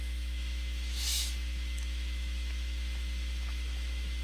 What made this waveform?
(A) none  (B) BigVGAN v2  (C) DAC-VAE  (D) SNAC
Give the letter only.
C